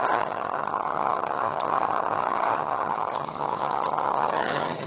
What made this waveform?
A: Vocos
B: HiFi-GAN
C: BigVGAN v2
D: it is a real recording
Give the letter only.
B